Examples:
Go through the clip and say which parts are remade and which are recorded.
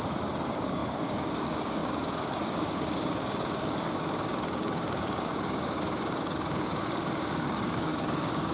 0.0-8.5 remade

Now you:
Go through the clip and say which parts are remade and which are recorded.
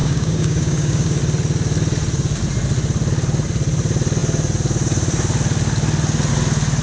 0.0-1.2 remade; 1.2-6.8 recorded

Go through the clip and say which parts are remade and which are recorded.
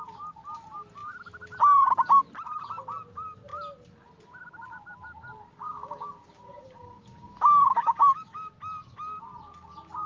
0.0-5.5 recorded; 5.5-8.5 remade; 8.5-10.1 recorded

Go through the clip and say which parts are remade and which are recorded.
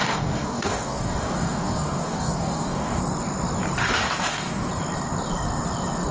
0.0-3.0 remade; 3.0-3.8 recorded; 3.8-4.7 remade; 4.7-6.1 recorded